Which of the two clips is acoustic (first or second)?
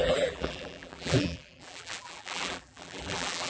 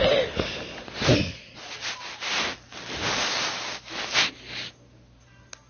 second